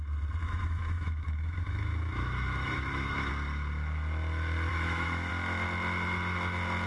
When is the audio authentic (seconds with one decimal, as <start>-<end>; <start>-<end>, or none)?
0.0-0.4; 3.3-4.7; 5.3-6.9

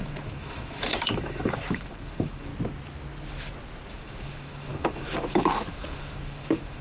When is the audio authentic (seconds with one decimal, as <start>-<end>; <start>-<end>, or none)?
2.5-3.9

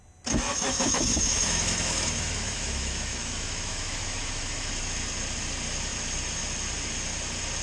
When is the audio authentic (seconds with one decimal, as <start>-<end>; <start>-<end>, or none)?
0.0-0.5; 4.7-7.6

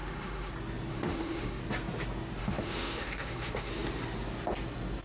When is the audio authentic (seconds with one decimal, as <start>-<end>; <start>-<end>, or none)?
0.5-0.9; 1.6-2.4; 3.7-5.0

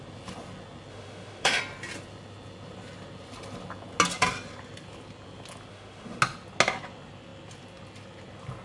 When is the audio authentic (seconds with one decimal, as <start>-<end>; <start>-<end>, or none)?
0.0-0.9; 1.6-5.7; 6.2-8.6